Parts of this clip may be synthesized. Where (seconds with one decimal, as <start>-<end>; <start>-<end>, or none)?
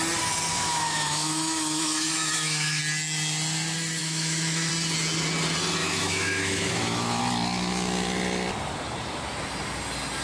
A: 0.5-2.8; 4.0-4.7; 5.8-7.2